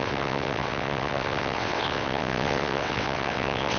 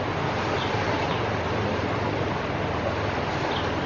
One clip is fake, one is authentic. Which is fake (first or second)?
first